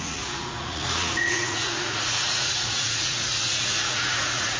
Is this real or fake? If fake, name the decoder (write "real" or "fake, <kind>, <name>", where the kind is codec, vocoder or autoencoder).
fake, vocoder, Vocos